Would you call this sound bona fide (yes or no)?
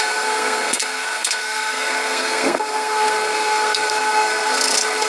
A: no